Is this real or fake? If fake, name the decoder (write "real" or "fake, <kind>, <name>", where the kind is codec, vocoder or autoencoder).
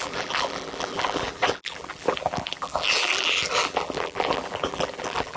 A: fake, vocoder, BigVGAN v2